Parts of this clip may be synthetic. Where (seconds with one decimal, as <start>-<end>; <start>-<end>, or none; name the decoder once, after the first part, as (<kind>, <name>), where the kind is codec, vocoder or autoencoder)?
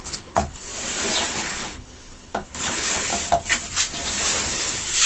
0.0-0.7 (codec, HILCodec); 1.3-3.1; 4.5-5.1